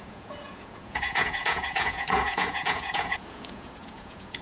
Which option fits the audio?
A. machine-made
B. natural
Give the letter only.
A